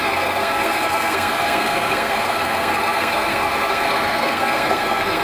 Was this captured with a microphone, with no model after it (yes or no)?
no